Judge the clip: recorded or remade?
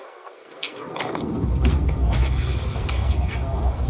remade